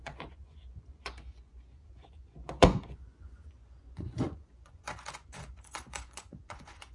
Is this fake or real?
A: fake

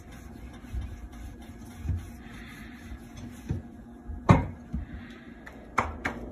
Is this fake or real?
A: fake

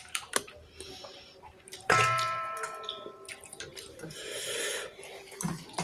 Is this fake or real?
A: fake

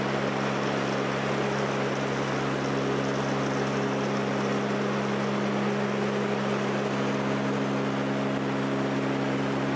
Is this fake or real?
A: real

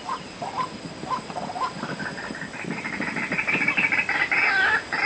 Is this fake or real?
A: real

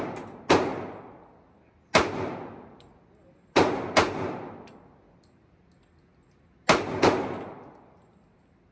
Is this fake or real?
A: real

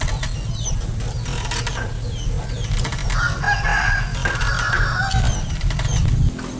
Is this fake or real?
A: real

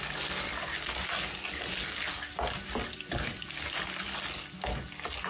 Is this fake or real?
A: real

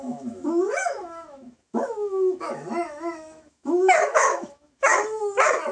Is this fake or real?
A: fake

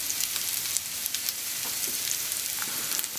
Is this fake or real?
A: fake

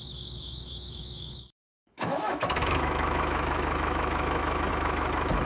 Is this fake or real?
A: fake